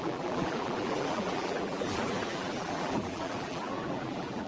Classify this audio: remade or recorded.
remade